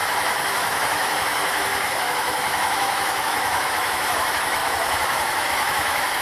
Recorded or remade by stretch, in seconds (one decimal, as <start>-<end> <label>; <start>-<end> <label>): 0.0-6.2 remade